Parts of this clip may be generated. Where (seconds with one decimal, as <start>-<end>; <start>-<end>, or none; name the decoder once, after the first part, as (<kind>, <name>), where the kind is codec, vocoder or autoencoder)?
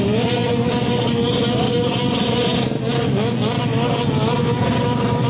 none